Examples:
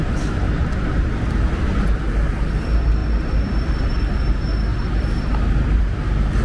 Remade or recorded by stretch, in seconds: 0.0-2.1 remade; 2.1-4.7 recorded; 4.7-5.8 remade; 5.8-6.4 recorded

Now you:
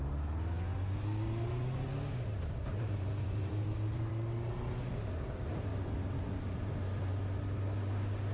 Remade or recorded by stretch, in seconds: 0.0-2.7 recorded; 2.7-4.1 remade; 4.1-5.7 recorded; 5.7-6.7 remade; 6.7-8.3 recorded